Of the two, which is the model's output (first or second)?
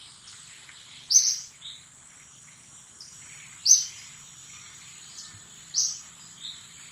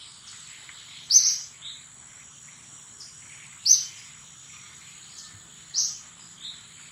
first